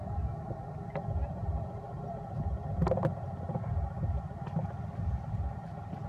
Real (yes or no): yes